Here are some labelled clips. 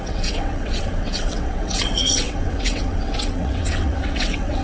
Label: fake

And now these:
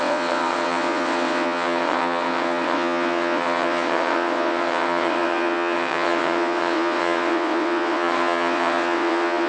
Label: fake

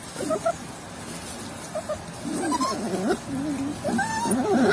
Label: real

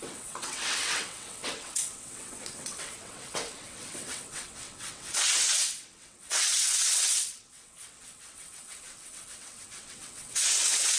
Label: fake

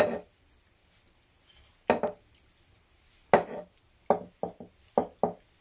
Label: real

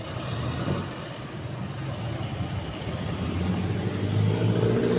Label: real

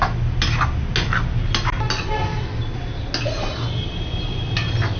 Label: real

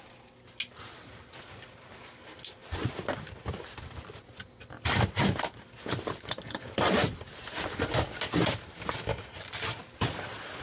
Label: real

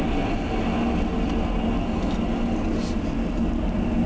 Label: real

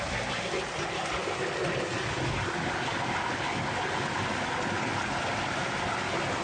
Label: real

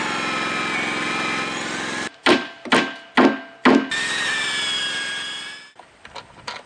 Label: real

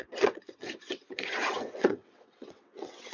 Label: fake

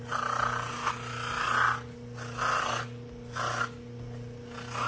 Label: real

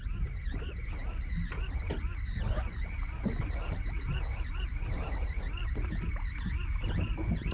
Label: real